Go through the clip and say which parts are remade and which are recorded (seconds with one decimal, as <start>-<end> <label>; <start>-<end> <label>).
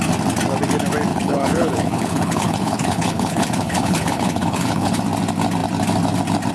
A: 0.0-1.1 recorded; 1.1-5.0 remade; 5.0-6.5 recorded